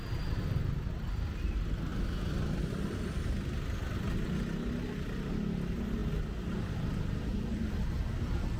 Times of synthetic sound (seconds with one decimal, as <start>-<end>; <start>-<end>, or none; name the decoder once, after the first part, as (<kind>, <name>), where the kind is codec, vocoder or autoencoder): none